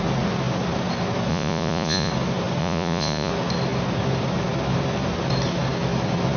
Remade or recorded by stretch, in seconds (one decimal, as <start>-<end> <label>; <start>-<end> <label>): 0.0-1.3 recorded; 1.3-2.1 remade; 2.1-2.6 recorded; 2.6-3.3 remade; 3.3-6.4 recorded